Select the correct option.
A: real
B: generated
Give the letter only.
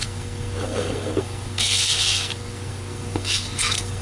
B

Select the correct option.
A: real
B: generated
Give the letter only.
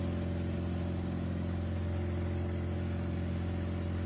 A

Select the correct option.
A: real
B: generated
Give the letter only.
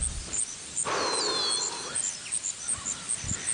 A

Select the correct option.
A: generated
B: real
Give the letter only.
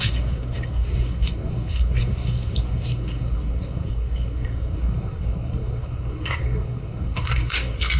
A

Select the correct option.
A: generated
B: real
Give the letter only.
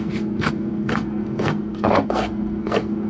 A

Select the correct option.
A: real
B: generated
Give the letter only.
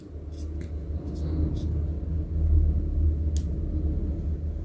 A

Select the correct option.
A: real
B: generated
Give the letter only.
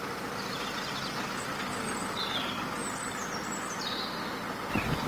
A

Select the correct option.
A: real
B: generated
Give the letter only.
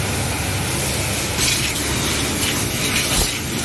A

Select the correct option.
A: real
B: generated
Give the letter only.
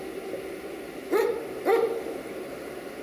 A